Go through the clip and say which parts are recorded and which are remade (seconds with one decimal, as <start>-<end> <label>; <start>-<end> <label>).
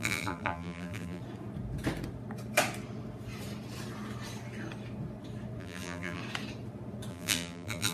0.0-1.2 remade; 1.2-5.6 recorded; 5.6-6.2 remade; 6.2-7.1 recorded; 7.1-7.9 remade